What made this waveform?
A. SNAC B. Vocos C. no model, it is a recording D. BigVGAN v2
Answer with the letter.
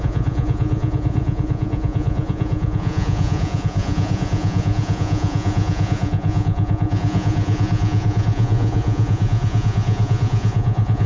B